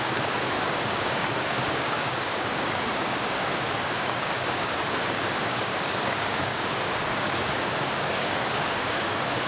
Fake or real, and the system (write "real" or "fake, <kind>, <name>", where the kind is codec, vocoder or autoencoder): fake, codec, DAC